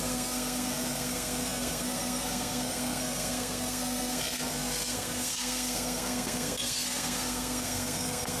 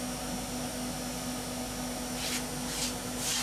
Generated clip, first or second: first